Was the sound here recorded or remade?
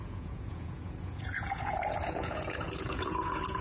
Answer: remade